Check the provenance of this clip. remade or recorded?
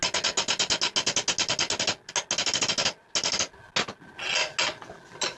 recorded